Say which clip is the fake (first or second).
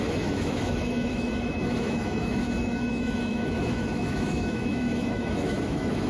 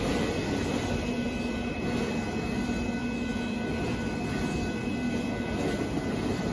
first